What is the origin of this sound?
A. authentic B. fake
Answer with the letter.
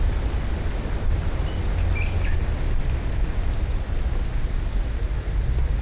A